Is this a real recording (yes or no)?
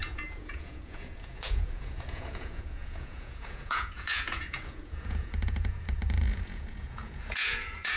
no